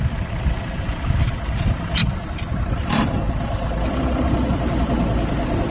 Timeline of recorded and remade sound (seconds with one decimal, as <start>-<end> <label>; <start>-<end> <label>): 0.0-5.7 recorded